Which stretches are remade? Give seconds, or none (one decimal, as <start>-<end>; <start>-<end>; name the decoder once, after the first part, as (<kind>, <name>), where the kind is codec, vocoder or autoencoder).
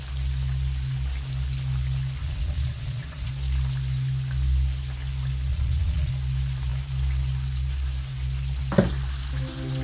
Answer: 2.2-3.3 (vocoder, Vocos); 5.5-6.1